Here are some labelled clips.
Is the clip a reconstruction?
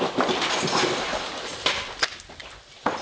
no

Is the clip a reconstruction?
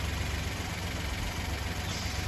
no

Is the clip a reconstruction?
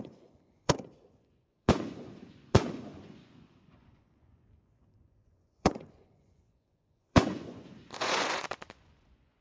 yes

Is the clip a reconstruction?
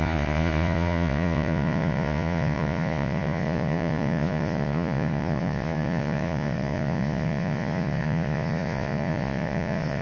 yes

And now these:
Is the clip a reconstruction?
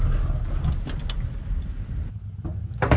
no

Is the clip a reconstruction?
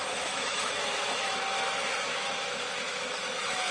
yes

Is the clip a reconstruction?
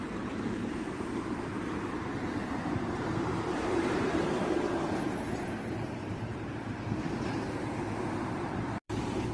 yes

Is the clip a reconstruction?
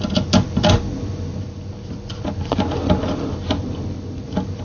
no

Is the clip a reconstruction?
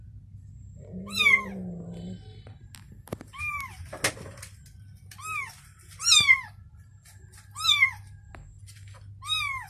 no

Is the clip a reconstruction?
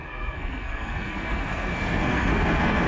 yes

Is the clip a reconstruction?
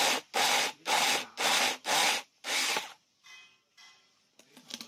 no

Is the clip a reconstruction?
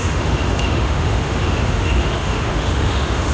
yes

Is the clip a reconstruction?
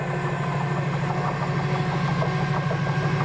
no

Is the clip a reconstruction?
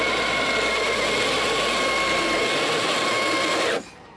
no